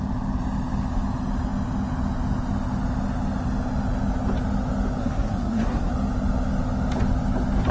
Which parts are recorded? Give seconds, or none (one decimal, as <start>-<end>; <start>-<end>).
0.0-5.0; 5.9-7.7

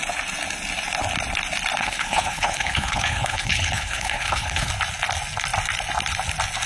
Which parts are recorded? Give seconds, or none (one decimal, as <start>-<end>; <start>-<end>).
0.0-1.8; 4.7-6.7

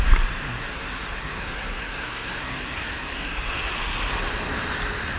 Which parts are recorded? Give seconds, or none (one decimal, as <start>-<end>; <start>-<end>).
0.0-0.6; 3.7-5.2

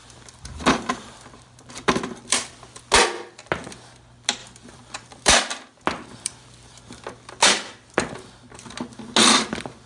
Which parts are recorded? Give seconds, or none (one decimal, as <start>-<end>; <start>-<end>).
2.8-4.4; 6.9-9.9